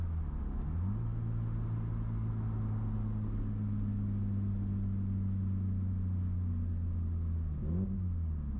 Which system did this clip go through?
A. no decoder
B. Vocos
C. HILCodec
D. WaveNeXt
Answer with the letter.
A